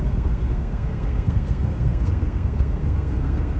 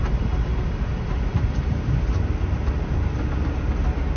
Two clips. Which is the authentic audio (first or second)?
second